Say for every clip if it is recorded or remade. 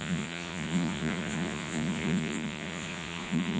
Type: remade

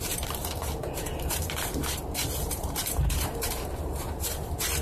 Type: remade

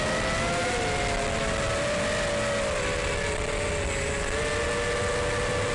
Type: recorded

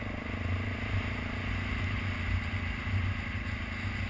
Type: recorded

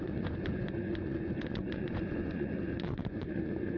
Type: remade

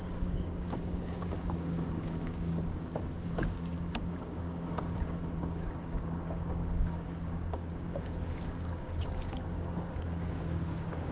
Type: remade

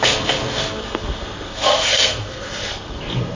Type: remade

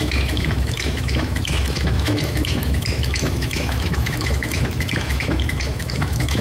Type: remade